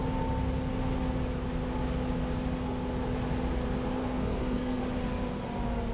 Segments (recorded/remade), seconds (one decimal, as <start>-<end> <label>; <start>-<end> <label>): 0.0-4.0 recorded; 4.0-4.8 remade; 4.8-5.9 recorded